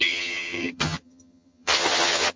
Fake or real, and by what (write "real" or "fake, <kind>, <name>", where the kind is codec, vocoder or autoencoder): fake, vocoder, HiFi-GAN